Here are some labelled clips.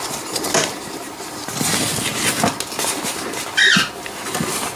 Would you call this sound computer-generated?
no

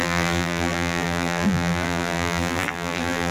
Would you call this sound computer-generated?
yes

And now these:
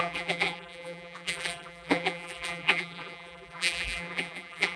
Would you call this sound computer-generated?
yes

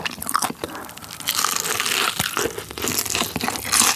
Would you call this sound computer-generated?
no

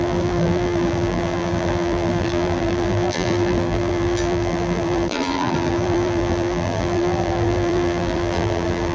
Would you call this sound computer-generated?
yes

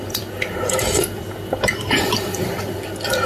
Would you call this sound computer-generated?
yes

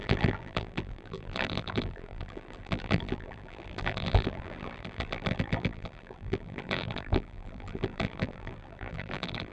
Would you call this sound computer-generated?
yes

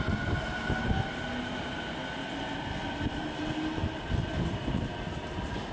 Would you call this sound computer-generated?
no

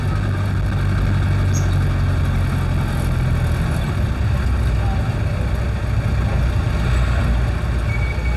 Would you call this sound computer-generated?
no